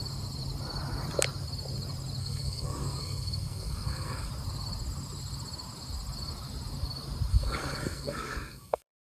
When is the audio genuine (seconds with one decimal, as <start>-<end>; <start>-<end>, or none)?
0.0-2.2; 4.3-7.3

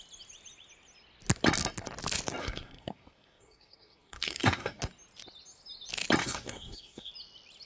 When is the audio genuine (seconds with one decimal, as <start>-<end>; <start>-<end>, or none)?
0.0-2.4; 4.8-6.2; 7.1-7.7

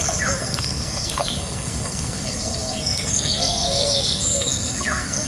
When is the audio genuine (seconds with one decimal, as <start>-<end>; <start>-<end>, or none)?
none

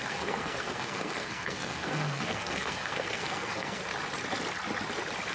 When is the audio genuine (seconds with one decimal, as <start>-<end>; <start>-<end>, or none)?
3.8-5.3